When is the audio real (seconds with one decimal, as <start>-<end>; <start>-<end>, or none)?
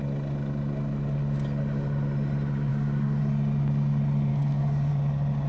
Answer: 0.0-2.7; 3.2-4.3; 4.9-5.5